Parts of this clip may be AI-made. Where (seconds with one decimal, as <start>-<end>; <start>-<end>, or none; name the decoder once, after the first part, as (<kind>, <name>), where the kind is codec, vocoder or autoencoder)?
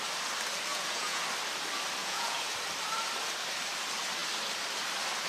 0.7-1.2 (vocoder, Vocos); 2.0-2.5